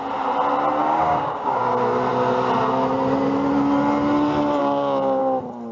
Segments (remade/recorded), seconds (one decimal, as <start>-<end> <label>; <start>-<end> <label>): 0.0-0.8 recorded; 0.8-1.6 remade; 1.6-4.6 recorded; 4.6-5.2 remade; 5.2-5.7 recorded